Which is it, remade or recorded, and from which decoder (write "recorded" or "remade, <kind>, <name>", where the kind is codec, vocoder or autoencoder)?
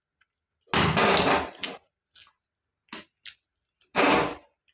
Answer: recorded